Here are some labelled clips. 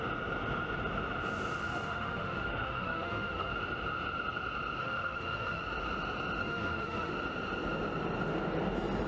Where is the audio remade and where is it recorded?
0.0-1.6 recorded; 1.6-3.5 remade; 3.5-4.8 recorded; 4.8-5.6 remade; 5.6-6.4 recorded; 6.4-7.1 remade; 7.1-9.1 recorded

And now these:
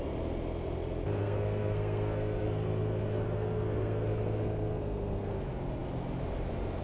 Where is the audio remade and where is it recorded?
0.0-1.2 recorded; 1.2-5.3 remade; 5.3-6.8 recorded

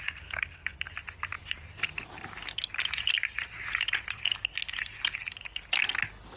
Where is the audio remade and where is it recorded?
0.0-6.4 recorded